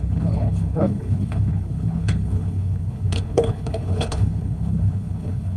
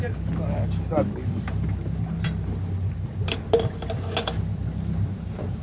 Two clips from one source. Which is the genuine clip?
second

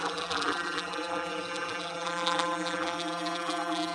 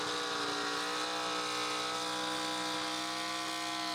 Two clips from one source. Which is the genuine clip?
second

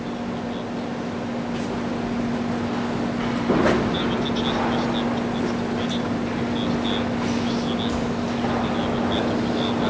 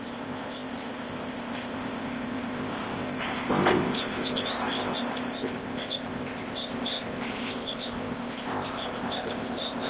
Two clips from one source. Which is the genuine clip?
first